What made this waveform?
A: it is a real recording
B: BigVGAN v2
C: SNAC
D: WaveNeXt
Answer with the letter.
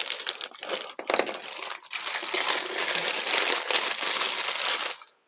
A